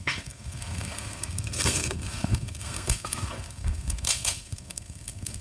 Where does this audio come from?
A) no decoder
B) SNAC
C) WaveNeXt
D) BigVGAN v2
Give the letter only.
B